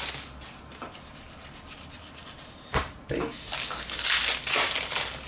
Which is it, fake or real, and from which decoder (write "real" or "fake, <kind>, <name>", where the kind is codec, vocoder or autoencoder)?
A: real